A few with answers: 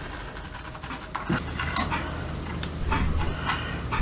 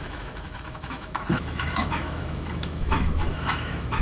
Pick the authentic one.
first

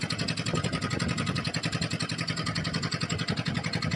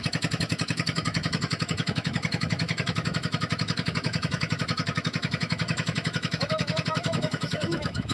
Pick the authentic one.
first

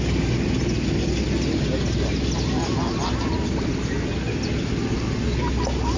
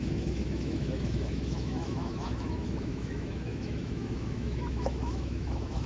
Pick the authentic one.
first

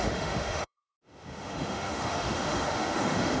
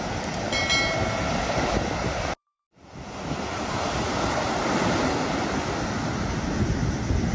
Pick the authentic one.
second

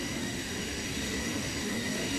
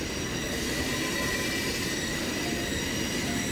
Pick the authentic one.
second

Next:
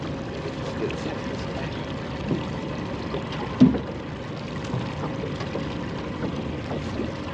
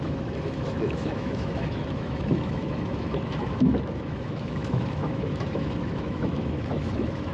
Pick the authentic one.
first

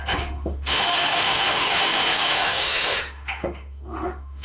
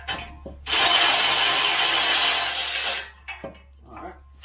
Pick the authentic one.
second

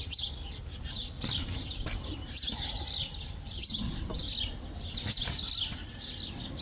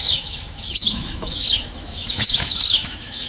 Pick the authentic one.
first